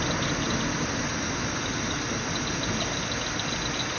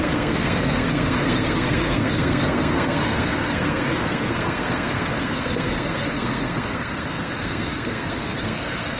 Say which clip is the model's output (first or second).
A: second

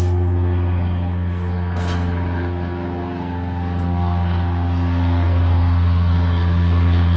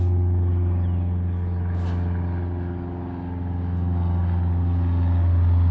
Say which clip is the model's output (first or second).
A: first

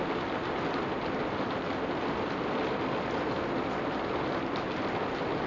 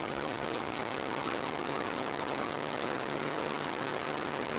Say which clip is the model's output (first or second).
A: second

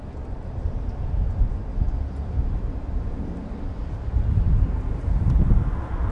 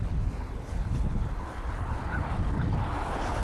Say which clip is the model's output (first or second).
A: second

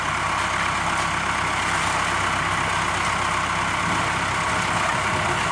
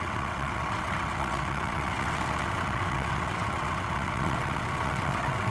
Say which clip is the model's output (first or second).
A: second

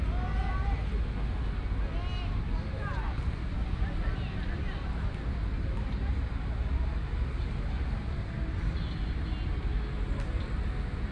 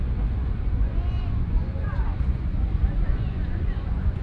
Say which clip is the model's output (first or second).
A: second